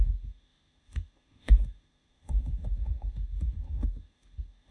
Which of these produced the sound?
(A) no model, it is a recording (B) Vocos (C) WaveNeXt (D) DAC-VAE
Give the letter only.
D